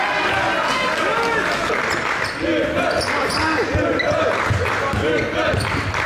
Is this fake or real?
real